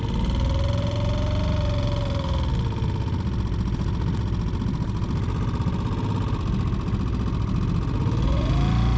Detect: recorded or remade recorded